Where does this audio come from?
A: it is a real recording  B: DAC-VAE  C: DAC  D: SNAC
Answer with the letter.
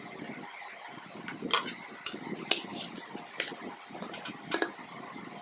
A